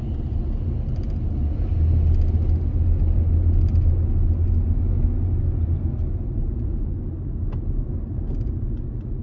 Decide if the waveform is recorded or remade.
recorded